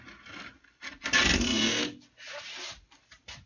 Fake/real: real